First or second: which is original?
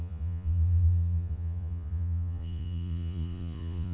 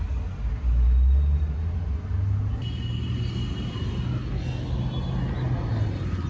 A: second